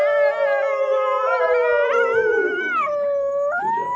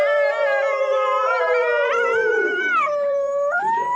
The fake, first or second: second